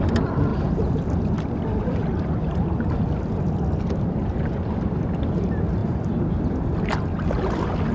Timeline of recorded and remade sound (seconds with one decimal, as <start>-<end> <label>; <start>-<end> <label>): 0.0-0.5 recorded; 0.5-1.6 remade; 1.6-7.9 recorded